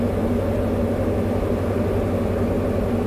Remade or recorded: recorded